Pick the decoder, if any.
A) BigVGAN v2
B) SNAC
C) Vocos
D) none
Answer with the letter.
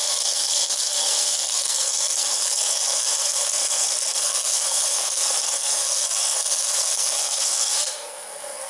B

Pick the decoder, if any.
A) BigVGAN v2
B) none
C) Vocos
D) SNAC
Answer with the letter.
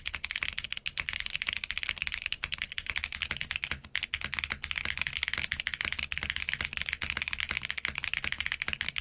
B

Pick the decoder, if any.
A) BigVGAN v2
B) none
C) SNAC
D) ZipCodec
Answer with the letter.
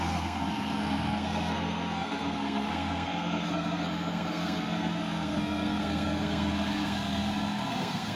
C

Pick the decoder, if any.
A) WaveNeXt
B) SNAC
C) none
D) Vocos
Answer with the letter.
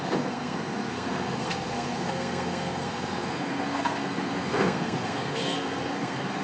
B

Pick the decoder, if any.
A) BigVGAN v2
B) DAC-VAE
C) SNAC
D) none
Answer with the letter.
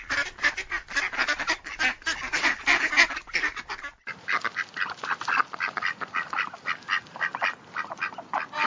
D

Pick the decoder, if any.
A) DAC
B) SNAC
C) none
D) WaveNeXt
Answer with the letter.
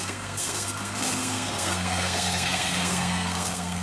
B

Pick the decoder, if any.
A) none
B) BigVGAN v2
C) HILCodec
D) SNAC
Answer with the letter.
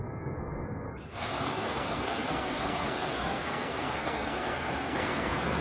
D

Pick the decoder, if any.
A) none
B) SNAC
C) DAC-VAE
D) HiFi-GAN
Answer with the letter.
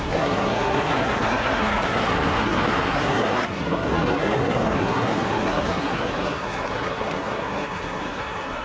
B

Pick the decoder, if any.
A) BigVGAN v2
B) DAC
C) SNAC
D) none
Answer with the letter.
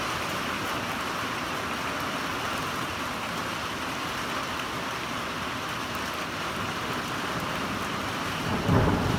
D